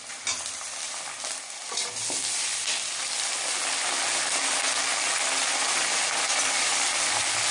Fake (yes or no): no